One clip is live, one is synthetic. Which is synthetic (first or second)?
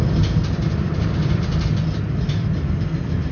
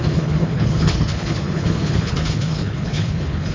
second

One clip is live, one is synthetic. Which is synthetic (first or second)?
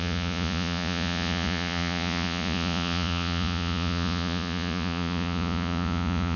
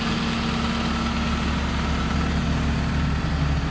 first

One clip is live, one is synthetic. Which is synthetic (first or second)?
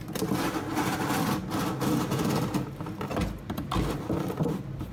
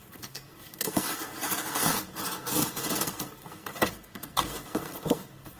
second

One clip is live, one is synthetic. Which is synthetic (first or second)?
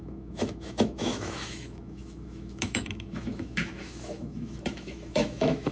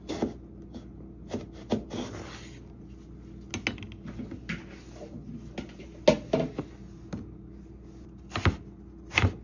first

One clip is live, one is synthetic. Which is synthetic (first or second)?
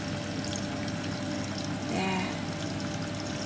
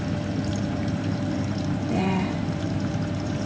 second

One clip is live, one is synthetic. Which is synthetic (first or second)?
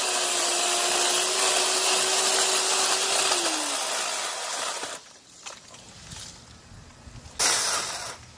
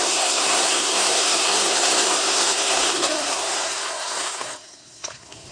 second